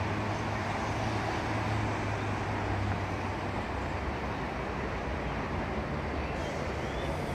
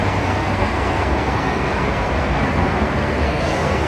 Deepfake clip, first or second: second